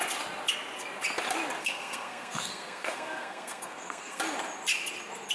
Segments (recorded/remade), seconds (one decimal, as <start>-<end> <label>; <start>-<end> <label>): 0.0-1.6 recorded; 1.6-4.2 remade; 4.2-5.3 recorded